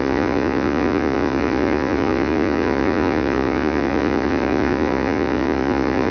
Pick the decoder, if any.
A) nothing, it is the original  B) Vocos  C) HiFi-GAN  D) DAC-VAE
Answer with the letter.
B